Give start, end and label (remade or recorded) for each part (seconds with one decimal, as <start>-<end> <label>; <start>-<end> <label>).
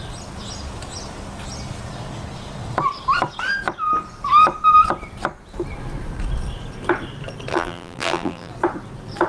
0.0-7.5 recorded; 7.5-8.5 remade; 8.5-9.3 recorded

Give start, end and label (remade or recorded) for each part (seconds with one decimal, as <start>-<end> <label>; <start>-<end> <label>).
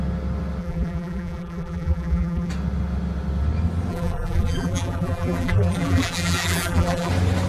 0.0-0.6 recorded; 0.6-2.5 remade; 2.5-3.9 recorded; 3.9-7.1 remade; 7.1-7.5 recorded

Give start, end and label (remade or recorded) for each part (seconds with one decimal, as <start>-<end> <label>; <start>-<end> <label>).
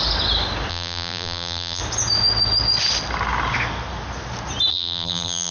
0.0-0.7 recorded; 0.7-1.8 remade; 1.8-4.7 recorded; 4.7-5.5 remade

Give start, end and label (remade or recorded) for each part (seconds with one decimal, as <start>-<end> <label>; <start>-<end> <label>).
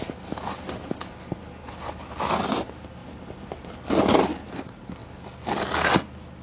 0.0-6.4 recorded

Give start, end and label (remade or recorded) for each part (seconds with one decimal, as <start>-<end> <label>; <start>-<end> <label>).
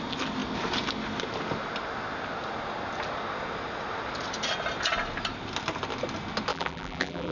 0.0-6.5 recorded; 6.5-7.3 remade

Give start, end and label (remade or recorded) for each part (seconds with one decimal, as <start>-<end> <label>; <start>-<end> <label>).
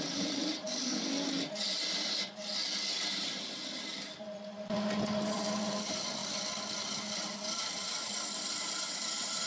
0.0-0.9 remade; 0.9-3.1 recorded; 3.1-6.2 remade; 6.2-7.3 recorded; 7.3-9.5 remade